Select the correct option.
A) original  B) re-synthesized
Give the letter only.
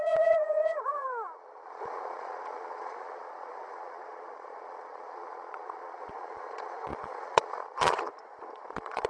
B